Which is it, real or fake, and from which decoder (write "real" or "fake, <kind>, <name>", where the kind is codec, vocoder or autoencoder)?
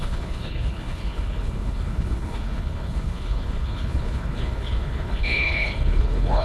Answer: fake, codec, HILCodec